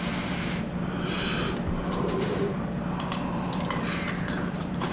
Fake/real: fake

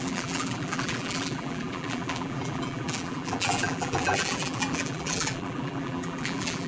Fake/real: fake